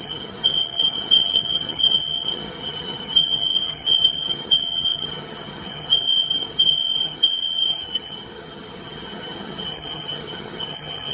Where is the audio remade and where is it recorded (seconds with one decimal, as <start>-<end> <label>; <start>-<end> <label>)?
0.0-11.1 remade